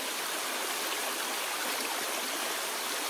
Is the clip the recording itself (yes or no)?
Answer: yes